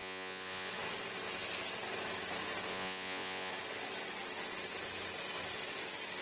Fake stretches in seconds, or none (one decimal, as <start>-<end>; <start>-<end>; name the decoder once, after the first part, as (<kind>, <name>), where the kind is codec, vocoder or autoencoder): 0.0-0.7 (vocoder, Vocos); 2.7-3.5

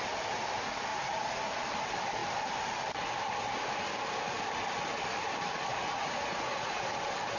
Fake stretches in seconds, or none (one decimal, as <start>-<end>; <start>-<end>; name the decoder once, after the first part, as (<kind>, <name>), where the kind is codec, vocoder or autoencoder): 0.9-1.4 (vocoder, Vocos); 5.7-7.0

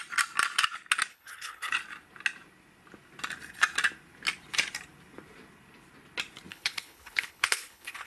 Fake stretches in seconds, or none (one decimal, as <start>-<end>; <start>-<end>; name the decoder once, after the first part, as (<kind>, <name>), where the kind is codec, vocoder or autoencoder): 1.1-1.7 (codec, HILCodec); 6.5-8.1

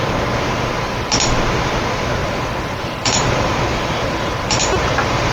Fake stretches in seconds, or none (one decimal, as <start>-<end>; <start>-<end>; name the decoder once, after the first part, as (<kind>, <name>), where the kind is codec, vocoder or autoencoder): 2.2-5.3 (vocoder, BigVGAN v2)

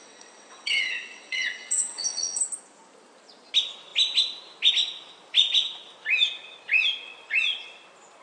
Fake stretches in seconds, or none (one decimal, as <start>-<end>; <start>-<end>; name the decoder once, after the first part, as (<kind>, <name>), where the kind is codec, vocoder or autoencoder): 0.0-2.4 (vocoder, WaveNeXt)